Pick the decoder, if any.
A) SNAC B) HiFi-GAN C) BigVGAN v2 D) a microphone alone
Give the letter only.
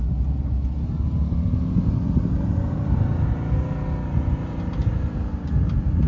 D